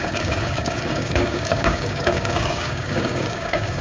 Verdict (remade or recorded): remade